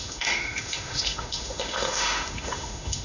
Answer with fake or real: fake